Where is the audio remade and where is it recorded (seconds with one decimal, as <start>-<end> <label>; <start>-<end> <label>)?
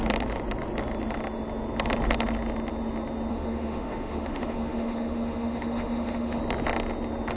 0.0-3.3 recorded; 3.3-6.4 remade; 6.4-7.4 recorded